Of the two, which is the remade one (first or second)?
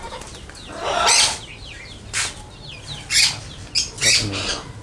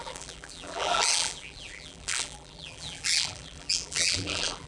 second